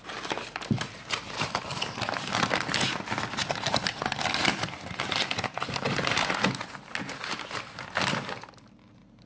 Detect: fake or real real